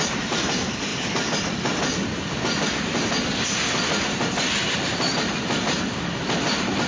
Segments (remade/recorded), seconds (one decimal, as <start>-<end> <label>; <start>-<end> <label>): 0.0-6.9 recorded

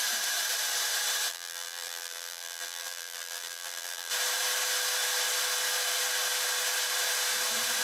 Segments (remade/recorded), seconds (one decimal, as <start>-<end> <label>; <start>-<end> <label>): 0.0-1.3 recorded; 1.3-4.1 remade; 4.1-7.8 recorded